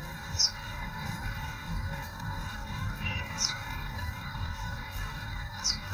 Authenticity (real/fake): fake